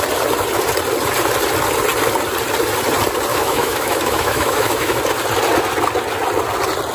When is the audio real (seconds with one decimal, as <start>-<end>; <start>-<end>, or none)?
0.0-3.3; 5.0-6.9